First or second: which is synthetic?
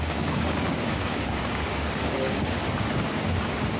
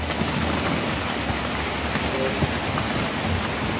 first